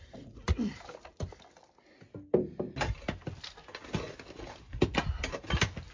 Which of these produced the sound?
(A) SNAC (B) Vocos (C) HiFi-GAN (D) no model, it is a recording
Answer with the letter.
D